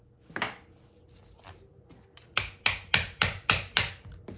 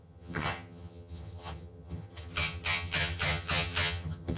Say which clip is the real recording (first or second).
first